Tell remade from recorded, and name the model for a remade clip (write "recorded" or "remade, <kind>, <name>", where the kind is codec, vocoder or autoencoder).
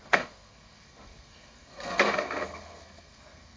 remade, codec, SNAC